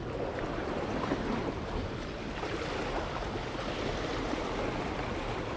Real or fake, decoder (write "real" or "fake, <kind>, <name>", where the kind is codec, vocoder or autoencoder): real